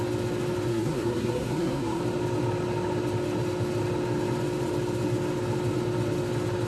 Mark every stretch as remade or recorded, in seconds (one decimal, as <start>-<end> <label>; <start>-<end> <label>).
0.0-0.7 recorded; 0.7-2.0 remade; 2.0-6.7 recorded